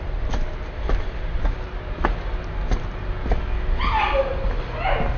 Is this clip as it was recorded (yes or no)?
yes